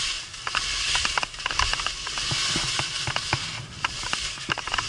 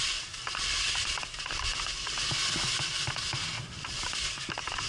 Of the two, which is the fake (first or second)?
second